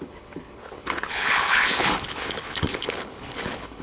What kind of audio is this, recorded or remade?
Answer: remade